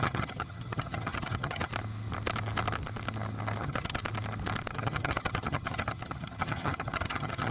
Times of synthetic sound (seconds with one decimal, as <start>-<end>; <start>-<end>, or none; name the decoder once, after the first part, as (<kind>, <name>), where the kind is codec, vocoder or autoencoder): 0.0-1.7 (vocoder, HiFi-GAN); 3.6-4.0; 4.7-7.5